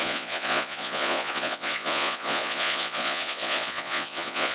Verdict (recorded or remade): remade